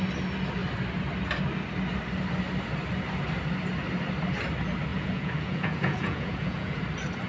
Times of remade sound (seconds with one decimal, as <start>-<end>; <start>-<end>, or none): 4.9-6.8